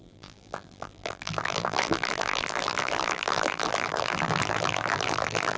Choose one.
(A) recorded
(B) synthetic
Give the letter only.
B